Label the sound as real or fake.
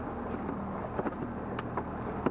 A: real